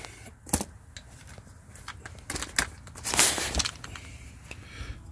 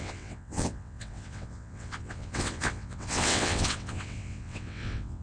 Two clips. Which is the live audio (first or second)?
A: first